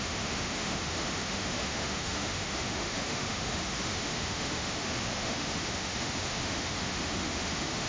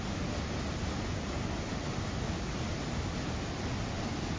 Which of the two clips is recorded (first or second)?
second